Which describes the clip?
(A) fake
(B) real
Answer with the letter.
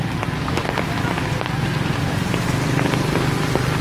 B